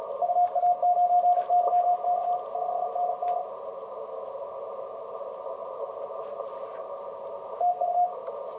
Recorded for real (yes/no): yes